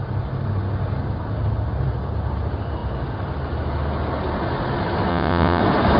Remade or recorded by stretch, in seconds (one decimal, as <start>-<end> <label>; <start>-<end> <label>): 0.0-5.1 recorded; 5.1-5.6 remade; 5.6-6.0 recorded